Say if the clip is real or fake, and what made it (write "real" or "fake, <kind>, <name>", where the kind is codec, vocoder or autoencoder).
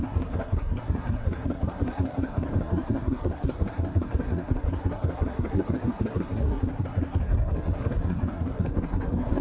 fake, codec, SNAC